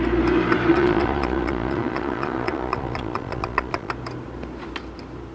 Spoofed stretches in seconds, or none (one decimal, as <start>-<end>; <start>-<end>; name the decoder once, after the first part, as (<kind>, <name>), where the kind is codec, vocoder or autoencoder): 0.7-3.9 (vocoder, Vocos)